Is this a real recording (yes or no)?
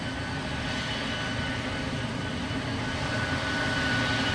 yes